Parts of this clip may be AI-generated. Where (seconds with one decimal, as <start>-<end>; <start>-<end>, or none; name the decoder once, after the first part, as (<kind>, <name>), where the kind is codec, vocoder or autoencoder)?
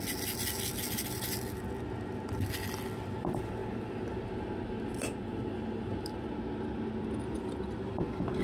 none